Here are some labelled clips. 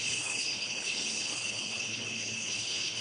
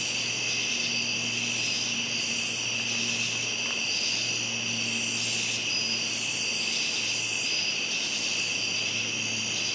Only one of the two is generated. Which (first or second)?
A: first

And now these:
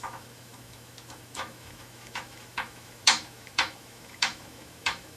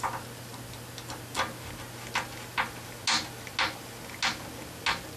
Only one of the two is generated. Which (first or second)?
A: first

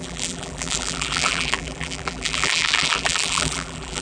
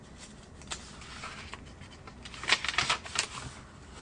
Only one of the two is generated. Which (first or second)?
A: first